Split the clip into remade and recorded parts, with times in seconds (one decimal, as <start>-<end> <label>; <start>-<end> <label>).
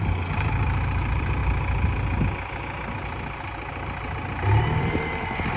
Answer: 0.0-1.4 remade; 1.4-4.8 recorded; 4.8-5.6 remade